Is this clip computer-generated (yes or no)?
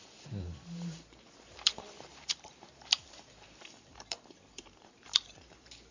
yes